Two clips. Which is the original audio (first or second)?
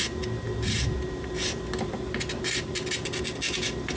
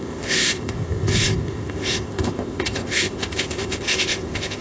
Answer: first